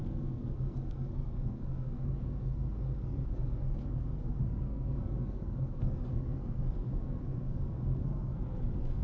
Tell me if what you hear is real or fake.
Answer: fake